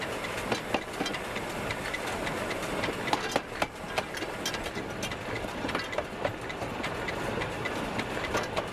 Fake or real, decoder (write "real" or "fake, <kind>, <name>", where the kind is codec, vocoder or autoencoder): real